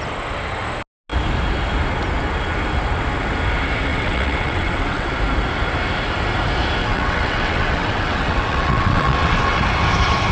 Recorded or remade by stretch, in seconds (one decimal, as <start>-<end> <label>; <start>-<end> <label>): 0.0-3.9 recorded; 3.9-5.1 remade; 5.1-6.8 recorded; 6.8-9.6 remade; 9.6-10.3 recorded